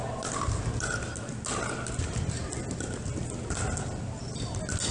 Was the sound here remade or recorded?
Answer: recorded